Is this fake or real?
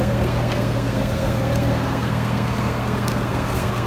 fake